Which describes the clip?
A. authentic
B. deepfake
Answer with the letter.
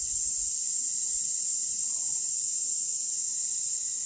A